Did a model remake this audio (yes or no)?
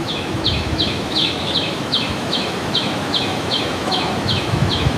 yes